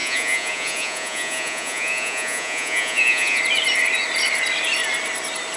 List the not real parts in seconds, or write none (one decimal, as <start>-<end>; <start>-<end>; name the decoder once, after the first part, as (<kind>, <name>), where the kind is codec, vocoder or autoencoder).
0.0-3.4 (vocoder, Vocos)